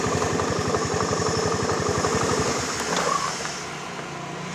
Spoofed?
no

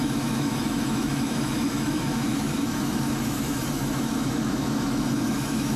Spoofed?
yes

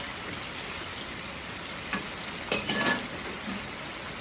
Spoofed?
no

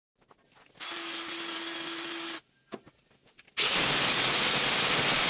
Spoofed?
no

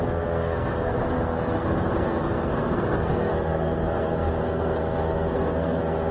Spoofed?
yes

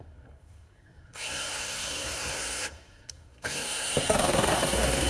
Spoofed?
yes